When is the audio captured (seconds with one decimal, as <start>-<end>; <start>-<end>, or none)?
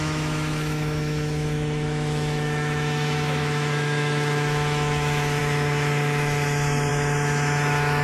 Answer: none